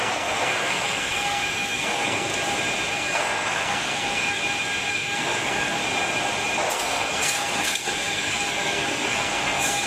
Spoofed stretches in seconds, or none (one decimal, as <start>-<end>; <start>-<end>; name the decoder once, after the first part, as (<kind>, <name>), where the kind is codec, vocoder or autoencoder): 0.0-2.3 (codec, SNAC); 2.9-4.4; 4.9-5.8; 6.7-9.9